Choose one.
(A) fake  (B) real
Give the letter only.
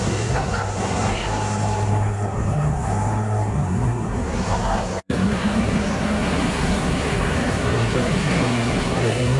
A